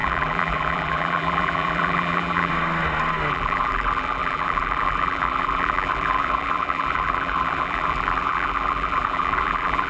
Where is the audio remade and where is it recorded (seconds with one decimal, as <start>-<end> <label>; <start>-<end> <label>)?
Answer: 0.0-2.5 remade; 2.5-3.3 recorded; 3.3-9.9 remade